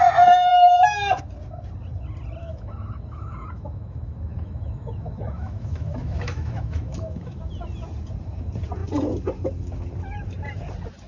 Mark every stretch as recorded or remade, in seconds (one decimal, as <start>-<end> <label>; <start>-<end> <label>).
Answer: 0.0-0.5 recorded; 0.5-1.2 remade; 1.2-2.4 recorded; 2.4-7.4 remade; 7.4-11.1 recorded